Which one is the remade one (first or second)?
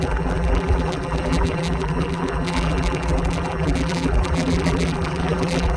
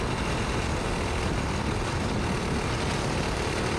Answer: first